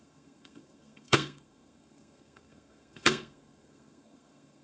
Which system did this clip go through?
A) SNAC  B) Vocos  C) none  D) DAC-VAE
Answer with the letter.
A